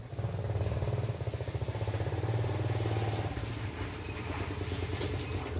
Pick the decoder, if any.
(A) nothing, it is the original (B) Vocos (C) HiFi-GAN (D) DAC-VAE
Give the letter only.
A